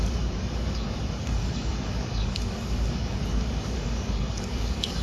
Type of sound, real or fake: fake